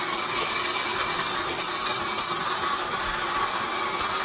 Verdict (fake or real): real